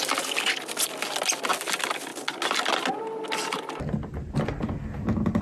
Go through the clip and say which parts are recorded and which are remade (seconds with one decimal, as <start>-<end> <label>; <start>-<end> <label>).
0.0-5.4 recorded